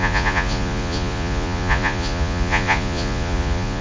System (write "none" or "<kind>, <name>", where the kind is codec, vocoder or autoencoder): vocoder, Vocos